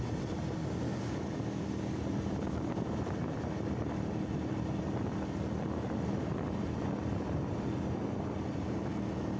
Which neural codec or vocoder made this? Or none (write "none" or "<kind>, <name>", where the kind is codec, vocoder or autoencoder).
none